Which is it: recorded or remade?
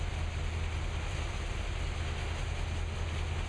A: recorded